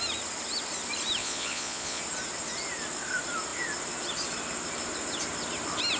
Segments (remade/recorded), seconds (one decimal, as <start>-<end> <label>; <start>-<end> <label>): 0.0-1.2 recorded; 1.2-2.0 remade; 2.0-6.0 recorded